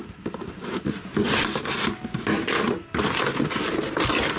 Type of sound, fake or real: real